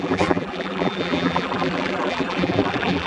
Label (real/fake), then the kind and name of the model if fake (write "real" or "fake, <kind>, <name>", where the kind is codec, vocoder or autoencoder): fake, vocoder, BigVGAN v2